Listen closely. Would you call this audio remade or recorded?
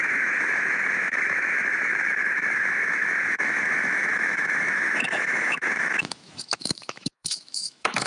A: remade